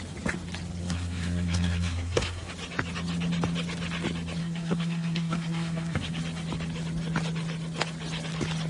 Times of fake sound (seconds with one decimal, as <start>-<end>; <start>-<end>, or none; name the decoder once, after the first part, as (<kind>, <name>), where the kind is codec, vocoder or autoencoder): 0.8-2.5 (codec, SNAC); 4.4-6.2